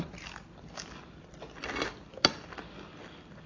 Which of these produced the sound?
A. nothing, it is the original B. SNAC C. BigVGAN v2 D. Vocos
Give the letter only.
A